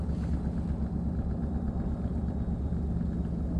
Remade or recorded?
recorded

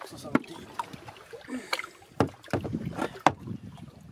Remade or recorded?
recorded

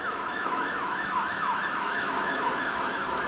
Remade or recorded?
remade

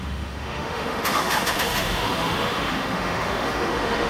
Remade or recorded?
remade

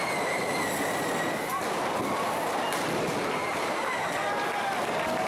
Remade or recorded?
recorded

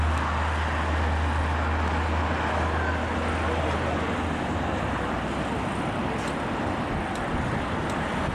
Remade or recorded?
recorded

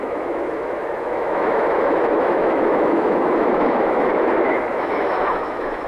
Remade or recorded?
remade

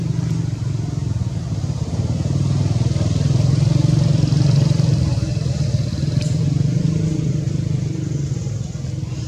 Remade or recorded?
recorded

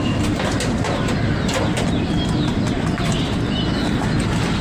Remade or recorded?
recorded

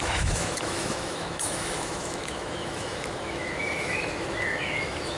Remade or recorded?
remade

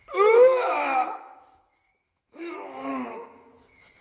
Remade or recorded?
remade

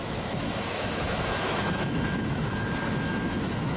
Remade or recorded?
remade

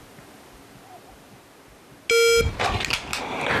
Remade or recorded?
recorded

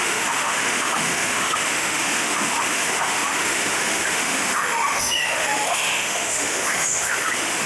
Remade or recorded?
remade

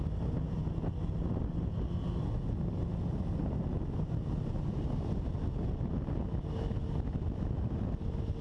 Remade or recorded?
recorded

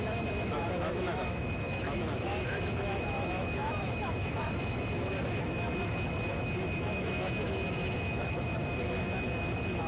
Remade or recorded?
remade